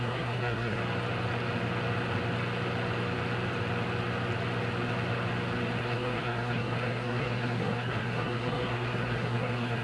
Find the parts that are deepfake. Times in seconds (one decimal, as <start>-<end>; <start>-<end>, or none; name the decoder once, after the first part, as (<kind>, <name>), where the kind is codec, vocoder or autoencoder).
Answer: 0.0-0.8 (codec, SNAC); 5.8-9.8